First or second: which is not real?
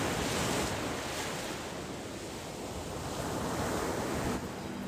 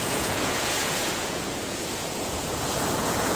second